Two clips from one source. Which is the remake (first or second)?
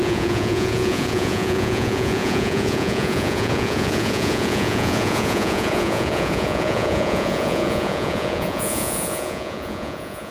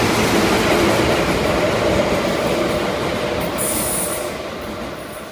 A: first